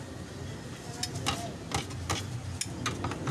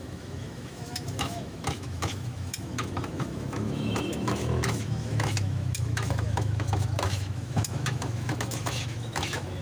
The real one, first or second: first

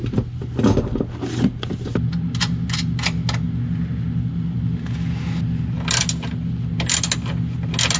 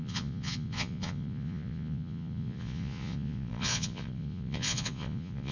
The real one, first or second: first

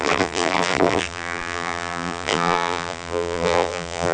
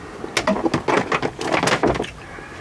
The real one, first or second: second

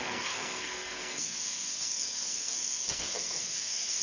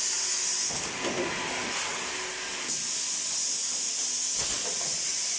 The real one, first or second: second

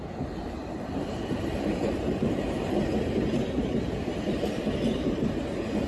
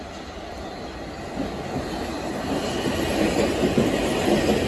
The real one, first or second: second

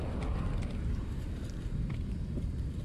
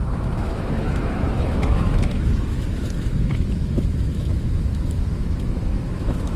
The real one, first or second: first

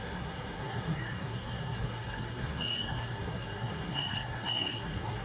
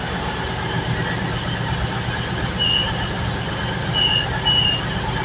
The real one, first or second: second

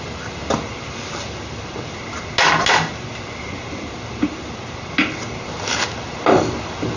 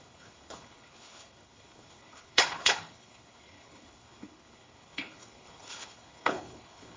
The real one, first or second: first